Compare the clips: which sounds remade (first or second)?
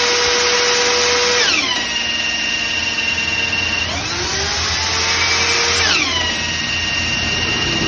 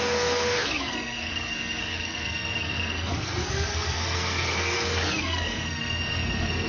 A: second